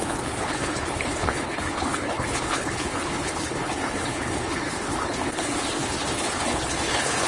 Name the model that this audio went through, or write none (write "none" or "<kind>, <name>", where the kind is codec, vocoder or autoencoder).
codec, HILCodec